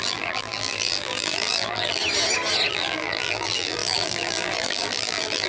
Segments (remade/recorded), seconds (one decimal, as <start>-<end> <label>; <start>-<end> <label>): 0.0-2.0 remade; 2.0-2.7 recorded; 2.7-5.5 remade